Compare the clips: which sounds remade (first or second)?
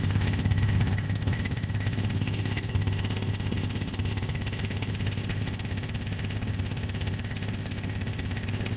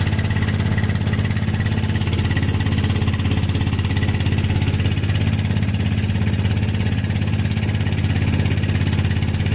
first